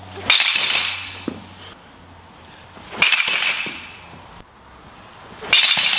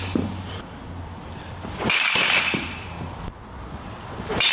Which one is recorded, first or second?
first